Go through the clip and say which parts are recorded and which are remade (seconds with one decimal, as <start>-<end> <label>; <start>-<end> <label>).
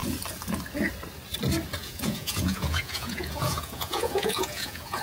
0.0-1.8 recorded; 1.8-5.0 remade